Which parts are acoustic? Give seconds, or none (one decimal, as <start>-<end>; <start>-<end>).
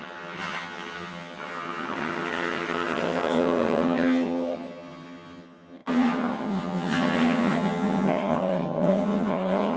none